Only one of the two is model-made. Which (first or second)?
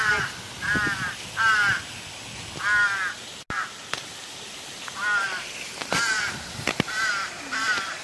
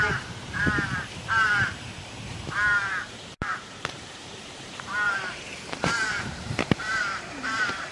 second